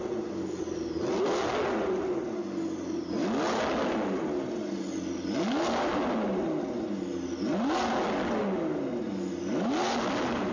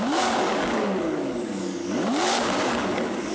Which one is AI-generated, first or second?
second